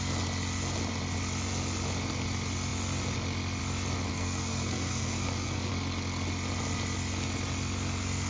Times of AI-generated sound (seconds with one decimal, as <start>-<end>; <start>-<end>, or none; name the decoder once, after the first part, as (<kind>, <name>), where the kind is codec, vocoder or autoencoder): 4.1-5.7 (codec, SNAC)